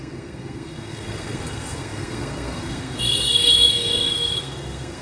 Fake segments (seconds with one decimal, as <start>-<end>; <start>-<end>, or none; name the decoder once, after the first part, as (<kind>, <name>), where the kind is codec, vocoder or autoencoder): 0.0-5.0 (codec, SNAC)